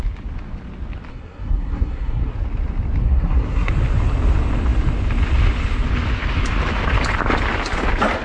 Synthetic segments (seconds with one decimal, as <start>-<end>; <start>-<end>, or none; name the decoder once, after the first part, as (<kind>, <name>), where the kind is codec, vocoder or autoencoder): 1.1-2.3 (codec, SNAC); 3.0-3.7